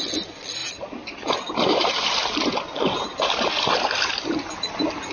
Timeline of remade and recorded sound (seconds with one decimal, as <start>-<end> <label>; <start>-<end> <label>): 0.0-5.1 recorded